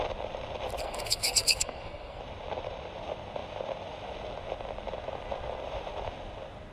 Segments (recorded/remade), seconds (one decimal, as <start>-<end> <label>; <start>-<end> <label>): 0.0-0.8 recorded; 0.8-2.2 remade; 2.2-6.7 recorded